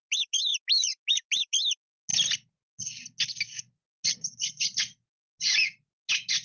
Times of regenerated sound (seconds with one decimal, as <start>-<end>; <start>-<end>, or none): none